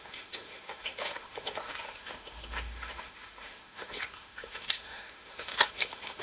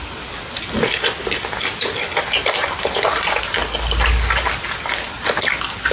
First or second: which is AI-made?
first